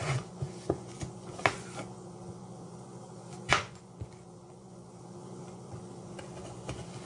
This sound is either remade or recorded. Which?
remade